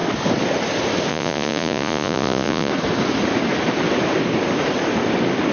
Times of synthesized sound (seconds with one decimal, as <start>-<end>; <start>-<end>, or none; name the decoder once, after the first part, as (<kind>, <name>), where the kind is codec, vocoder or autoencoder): 1.1-2.7 (vocoder, Vocos)